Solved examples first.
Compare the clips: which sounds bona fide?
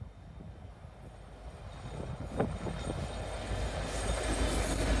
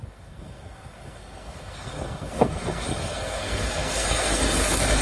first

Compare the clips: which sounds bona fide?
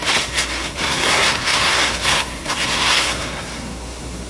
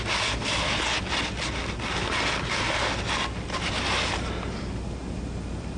second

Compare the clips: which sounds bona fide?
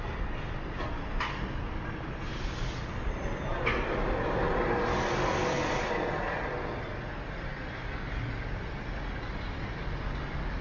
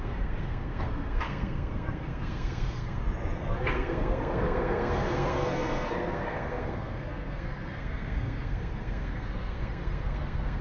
first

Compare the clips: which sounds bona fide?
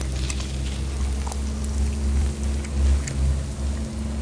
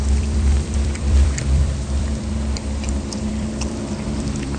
first